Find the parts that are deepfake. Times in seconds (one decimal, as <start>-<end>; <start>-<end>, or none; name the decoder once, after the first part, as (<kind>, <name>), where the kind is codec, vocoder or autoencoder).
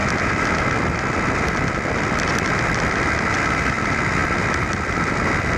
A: none